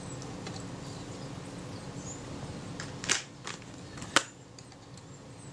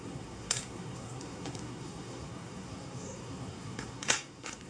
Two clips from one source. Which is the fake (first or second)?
second